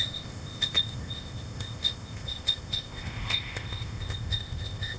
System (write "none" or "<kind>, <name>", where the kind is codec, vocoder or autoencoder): codec, ZipCodec